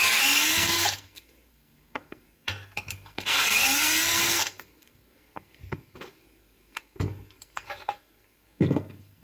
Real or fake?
fake